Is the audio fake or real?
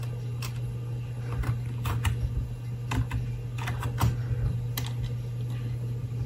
real